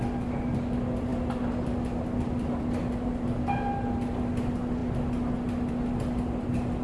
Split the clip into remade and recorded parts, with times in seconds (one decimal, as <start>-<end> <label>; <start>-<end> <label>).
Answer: 0.0-6.8 recorded